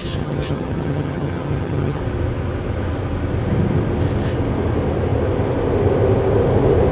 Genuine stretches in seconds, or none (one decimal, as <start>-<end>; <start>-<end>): 2.0-6.9